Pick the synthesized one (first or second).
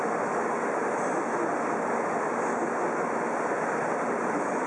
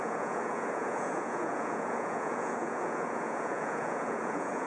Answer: second